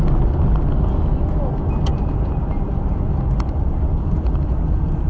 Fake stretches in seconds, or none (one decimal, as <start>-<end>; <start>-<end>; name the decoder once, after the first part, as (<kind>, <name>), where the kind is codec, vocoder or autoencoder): 1.9-5.1 (vocoder, BigVGAN v2)